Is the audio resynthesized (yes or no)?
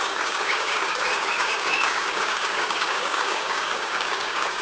yes